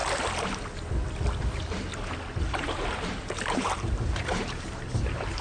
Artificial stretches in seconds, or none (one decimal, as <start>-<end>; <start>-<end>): 2.4-5.4